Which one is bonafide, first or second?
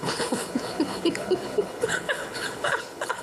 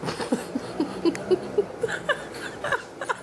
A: second